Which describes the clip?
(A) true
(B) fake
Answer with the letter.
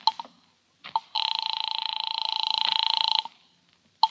A